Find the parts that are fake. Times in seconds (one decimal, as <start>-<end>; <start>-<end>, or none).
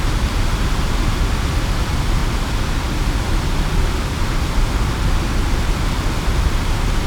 none